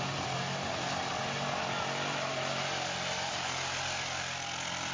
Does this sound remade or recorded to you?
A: recorded